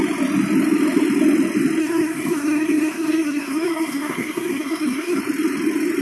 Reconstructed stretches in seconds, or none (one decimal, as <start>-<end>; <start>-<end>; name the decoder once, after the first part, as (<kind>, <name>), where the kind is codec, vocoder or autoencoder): 1.8-5.2 (codec, SNAC)